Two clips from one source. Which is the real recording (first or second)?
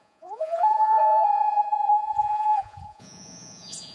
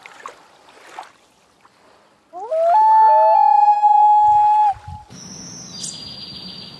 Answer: second